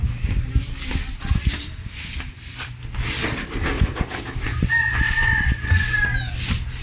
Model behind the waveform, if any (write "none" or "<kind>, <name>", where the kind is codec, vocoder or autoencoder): none